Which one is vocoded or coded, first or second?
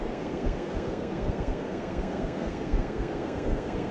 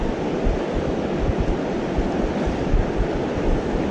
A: first